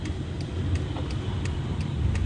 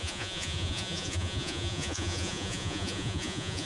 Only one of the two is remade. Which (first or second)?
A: second